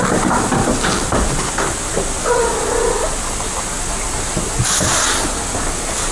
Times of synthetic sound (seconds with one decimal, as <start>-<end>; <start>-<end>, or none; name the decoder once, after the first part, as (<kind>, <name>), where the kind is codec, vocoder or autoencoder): none